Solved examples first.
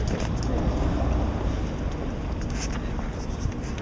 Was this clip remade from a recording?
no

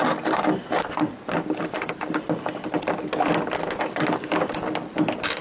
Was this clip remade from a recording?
no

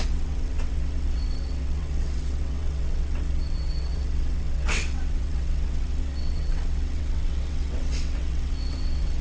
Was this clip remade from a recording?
yes